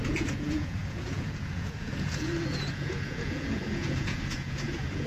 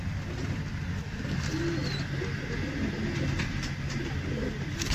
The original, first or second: second